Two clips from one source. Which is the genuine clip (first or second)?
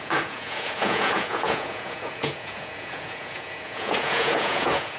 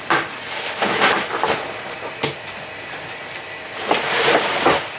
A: second